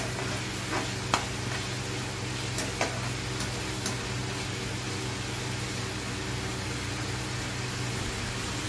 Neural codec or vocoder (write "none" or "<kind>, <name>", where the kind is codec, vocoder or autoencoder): none